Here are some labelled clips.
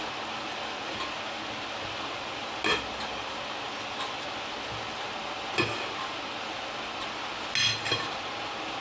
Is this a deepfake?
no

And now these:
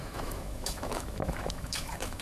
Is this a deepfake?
yes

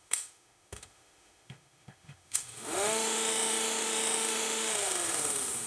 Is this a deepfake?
yes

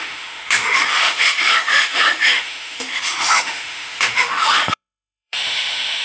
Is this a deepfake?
yes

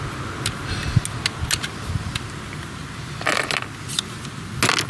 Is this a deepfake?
no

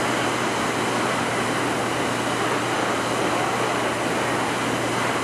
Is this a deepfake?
no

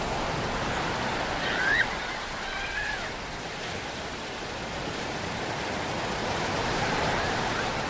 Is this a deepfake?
no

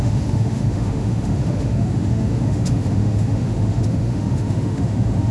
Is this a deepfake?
yes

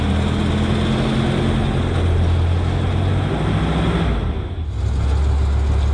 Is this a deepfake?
no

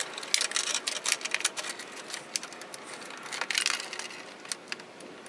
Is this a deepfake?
no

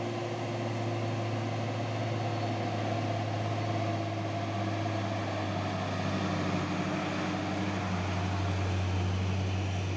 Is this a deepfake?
no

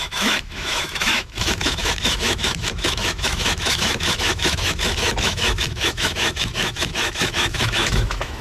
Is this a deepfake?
yes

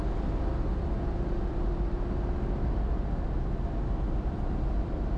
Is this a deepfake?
no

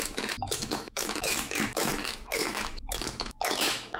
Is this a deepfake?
yes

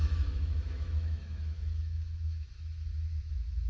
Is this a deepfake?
yes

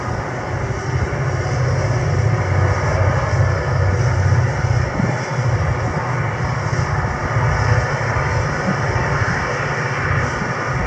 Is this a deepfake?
no